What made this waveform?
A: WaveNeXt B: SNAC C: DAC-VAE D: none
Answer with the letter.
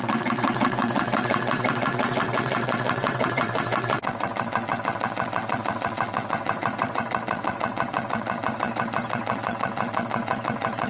A